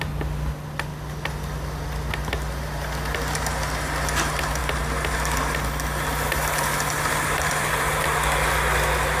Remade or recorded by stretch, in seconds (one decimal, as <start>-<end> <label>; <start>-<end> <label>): 0.0-9.2 recorded